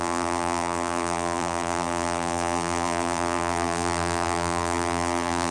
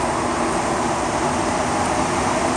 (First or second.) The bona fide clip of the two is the second